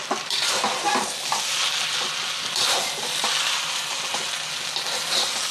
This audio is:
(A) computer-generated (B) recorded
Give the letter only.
B